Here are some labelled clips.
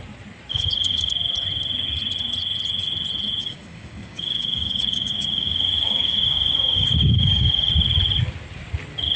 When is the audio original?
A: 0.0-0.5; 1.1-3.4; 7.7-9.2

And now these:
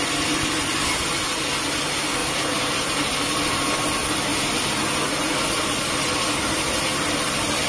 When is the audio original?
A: 0.0-7.7

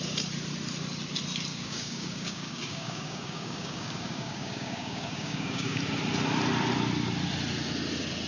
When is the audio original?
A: 0.0-1.5; 5.8-8.3

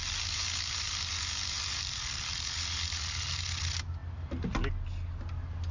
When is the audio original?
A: 0.0-5.7

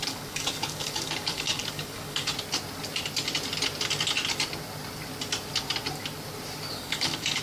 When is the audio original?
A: 2.3-6.7

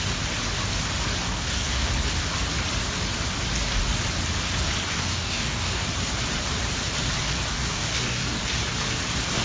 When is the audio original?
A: 0.0-1.3; 1.9-4.9; 5.8-7.5; 8.4-9.4